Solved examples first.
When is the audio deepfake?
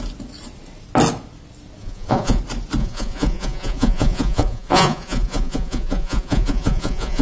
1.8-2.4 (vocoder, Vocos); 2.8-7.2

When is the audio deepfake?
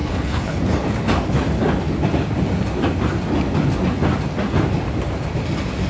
0.0-0.6 (codec, HILCodec)